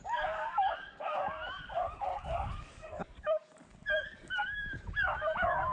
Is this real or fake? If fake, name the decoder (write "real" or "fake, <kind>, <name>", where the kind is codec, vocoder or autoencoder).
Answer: fake, codec, DAC